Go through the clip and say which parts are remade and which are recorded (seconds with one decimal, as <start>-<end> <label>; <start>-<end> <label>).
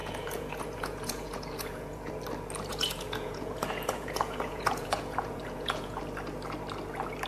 0.0-2.1 remade; 2.1-2.7 recorded; 2.7-6.0 remade; 6.0-7.3 recorded